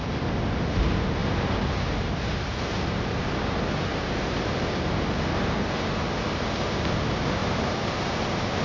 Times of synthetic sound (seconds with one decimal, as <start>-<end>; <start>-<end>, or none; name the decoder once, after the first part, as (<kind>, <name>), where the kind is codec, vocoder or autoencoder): 1.2-3.4 (vocoder, BigVGAN v2); 3.9-4.7; 7.4-8.6